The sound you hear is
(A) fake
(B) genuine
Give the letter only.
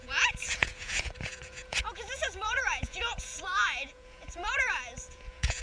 A